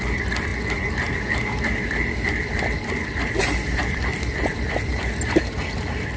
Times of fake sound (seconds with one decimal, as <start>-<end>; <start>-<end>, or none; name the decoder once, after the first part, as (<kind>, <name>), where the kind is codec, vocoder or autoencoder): none